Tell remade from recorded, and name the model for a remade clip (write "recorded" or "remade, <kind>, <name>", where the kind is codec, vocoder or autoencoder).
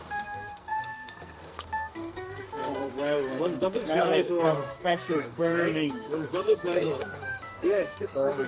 remade, codec, SNAC